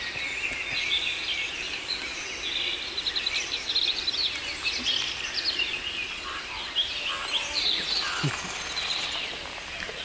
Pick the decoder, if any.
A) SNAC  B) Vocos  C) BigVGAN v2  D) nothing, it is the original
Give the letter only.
D